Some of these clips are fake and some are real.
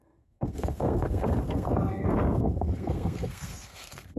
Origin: fake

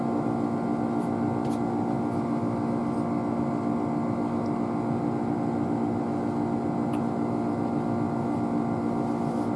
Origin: real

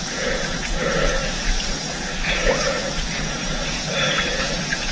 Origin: fake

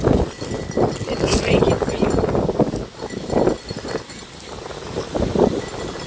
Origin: real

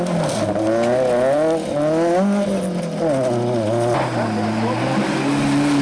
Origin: real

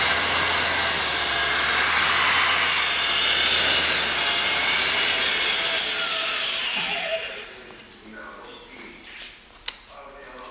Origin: real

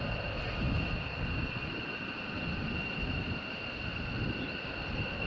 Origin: real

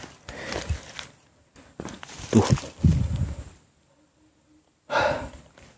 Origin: real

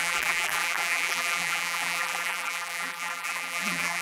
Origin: fake